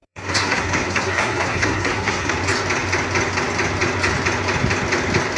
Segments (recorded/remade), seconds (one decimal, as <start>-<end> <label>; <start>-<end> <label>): 0.0-2.3 remade; 2.3-5.4 recorded